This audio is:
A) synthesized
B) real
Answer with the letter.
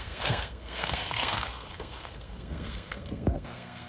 A